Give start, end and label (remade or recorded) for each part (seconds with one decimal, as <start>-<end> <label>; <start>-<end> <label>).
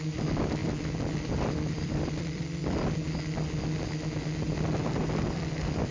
0.0-0.6 recorded; 0.6-2.6 remade; 2.6-5.9 recorded